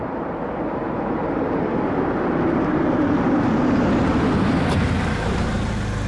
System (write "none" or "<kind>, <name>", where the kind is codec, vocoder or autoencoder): none